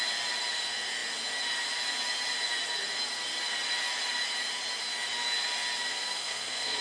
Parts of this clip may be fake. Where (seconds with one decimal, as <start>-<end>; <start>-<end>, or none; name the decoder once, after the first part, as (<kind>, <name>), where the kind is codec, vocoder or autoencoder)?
5.9-6.8 (codec, SNAC)